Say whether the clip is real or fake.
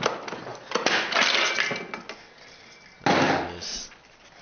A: real